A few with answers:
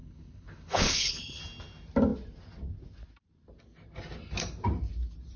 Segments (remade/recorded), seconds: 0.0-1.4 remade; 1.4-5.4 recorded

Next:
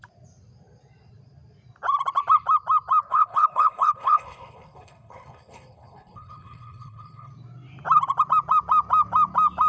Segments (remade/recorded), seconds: 0.0-3.1 recorded; 3.1-7.3 remade; 7.3-9.7 recorded

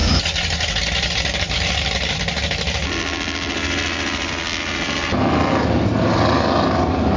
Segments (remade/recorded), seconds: 0.0-7.2 recorded

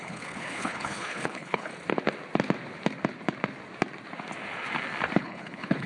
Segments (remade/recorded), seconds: 0.0-1.7 remade; 1.7-5.2 recorded; 5.2-5.9 remade

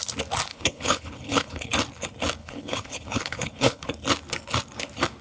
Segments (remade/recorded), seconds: 0.0-0.5 recorded; 0.5-1.7 remade; 1.7-2.4 recorded; 2.4-3.9 remade; 3.9-5.2 recorded

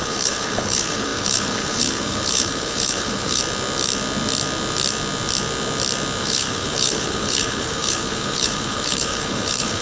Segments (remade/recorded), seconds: 0.0-3.4 remade; 3.4-6.2 recorded; 6.2-9.8 remade

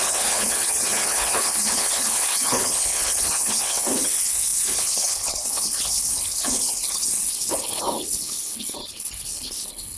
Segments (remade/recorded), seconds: 0.0-10.0 remade

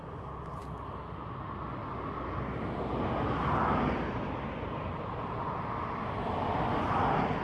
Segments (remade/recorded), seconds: 0.0-7.4 recorded